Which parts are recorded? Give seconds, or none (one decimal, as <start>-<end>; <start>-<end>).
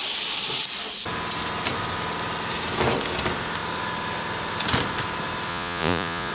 0.0-5.5